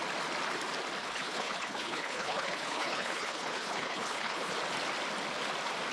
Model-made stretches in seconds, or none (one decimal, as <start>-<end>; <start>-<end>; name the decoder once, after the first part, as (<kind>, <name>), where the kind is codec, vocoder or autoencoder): 1.0-4.5 (codec, HILCodec)